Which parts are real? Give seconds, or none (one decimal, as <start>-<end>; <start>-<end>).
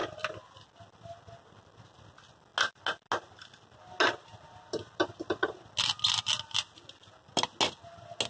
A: 0.0-8.3